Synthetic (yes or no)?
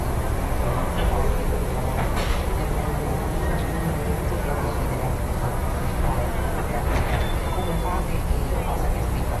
no